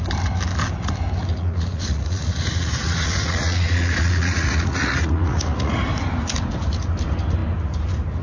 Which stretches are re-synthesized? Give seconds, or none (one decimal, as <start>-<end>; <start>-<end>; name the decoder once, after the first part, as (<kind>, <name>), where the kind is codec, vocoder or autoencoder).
1.3-5.8 (vocoder, Vocos)